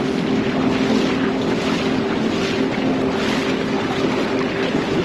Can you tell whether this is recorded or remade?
recorded